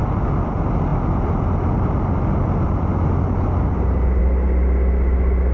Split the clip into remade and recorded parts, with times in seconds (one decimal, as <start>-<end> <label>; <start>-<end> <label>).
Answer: 0.0-5.5 recorded